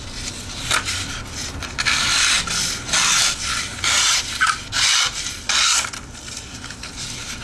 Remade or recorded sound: remade